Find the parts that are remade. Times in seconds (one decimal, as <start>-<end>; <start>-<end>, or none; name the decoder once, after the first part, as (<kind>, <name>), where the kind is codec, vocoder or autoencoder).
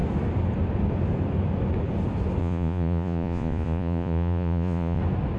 2.4-5.0 (vocoder, Vocos)